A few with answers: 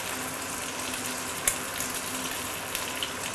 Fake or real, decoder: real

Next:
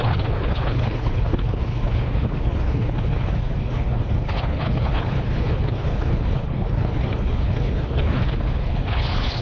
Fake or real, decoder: fake, codec, HILCodec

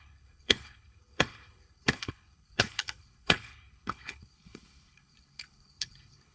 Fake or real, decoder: fake, codec, HILCodec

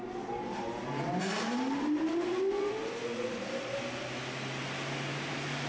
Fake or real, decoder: real